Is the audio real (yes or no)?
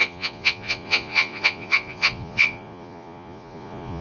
no